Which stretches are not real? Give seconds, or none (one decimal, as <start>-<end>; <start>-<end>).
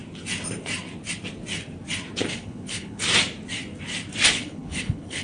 2.3-3.0; 4.3-5.2